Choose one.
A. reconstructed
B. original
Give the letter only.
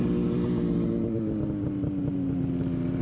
B